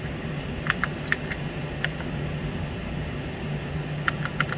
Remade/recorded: recorded